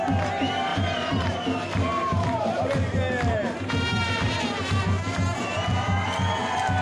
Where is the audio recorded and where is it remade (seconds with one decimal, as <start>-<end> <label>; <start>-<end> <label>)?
0.0-0.7 recorded; 0.7-4.8 remade; 4.8-6.8 recorded